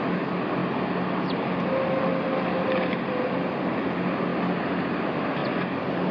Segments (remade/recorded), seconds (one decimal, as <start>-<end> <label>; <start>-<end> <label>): 0.0-6.1 recorded